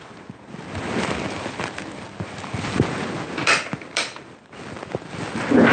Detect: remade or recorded recorded